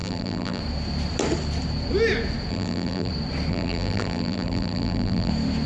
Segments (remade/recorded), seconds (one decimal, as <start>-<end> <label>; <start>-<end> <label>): 0.0-0.6 remade; 0.6-2.5 recorded; 2.5-3.1 remade; 3.1-3.5 recorded; 3.5-5.3 remade; 5.3-5.7 recorded